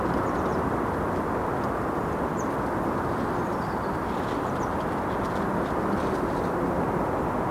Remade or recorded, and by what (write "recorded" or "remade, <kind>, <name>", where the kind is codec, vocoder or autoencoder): recorded